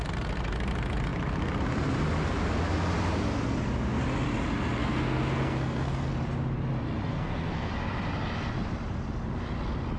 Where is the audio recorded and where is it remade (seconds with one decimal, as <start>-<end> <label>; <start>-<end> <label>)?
0.0-4.8 recorded; 4.8-6.1 remade; 6.1-7.1 recorded; 7.1-7.7 remade; 7.7-10.0 recorded